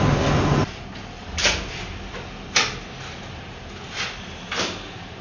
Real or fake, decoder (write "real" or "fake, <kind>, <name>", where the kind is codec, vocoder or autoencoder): real